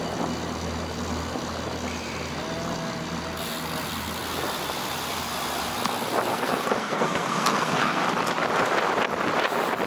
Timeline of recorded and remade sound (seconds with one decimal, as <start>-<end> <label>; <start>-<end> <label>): 0.0-6.3 recorded; 6.3-8.1 remade; 8.1-9.9 recorded